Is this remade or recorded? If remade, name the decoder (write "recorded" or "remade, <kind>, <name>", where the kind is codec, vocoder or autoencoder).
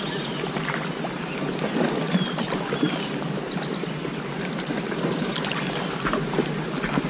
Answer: recorded